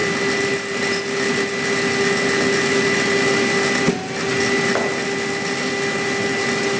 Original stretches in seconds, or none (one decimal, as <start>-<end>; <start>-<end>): 0.0-6.8